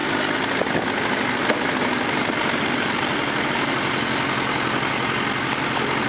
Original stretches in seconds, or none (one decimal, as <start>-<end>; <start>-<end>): 0.0-6.1